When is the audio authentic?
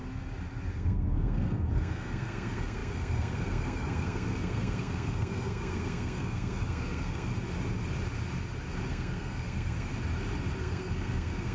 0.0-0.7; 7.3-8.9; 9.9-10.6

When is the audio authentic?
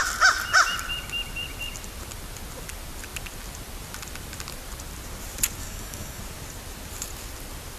0.0-5.6; 6.2-7.8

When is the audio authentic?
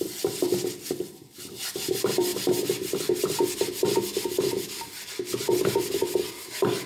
0.0-6.9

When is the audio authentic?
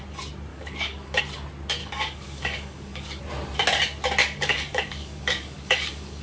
0.0-0.5; 1.2-1.8; 3.2-4.2